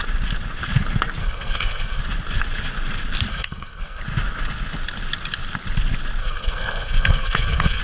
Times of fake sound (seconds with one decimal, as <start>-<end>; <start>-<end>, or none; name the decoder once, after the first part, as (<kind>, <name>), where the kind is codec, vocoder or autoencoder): 1.2-2.0 (codec, SNAC); 3.3-4.0; 6.2-7.8